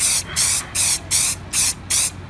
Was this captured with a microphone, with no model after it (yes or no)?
yes